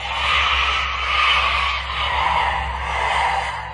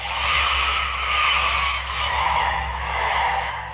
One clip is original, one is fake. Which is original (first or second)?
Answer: first